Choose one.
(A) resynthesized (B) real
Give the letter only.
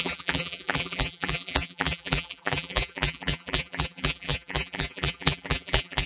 A